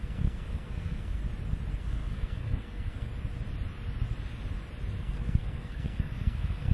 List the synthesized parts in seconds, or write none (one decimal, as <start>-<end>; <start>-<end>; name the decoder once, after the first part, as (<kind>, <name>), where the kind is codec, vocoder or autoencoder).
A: 0.0-1.2 (codec, SNAC); 1.7-3.1; 5.0-6.7